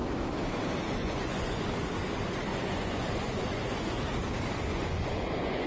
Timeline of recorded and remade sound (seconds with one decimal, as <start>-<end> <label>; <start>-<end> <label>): 0.0-1.0 recorded; 1.0-1.7 remade; 1.7-2.5 recorded; 2.5-4.0 remade; 4.0-4.7 recorded; 4.7-5.7 remade